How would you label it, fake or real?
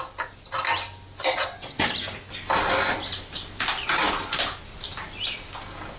real